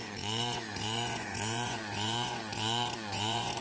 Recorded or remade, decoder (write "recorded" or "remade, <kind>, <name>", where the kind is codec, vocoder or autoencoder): remade, vocoder, Vocos